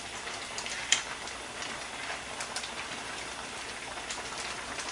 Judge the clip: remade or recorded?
recorded